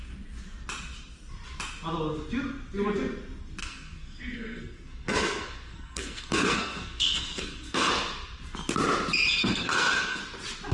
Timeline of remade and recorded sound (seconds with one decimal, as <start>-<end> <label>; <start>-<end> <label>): 0.0-3.6 recorded; 3.6-7.9 remade; 7.9-9.4 recorded; 9.4-10.2 remade; 10.2-10.7 recorded